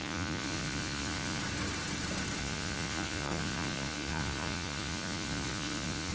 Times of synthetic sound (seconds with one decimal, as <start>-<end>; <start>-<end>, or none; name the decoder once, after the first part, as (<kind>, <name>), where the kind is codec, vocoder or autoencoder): 0.0-1.4 (vocoder, Vocos); 2.4-6.1